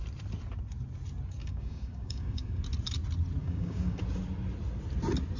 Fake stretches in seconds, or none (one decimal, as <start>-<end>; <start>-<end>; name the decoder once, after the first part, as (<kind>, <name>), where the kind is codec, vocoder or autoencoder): 1.4-2.6 (codec, DAC); 3.4-4.0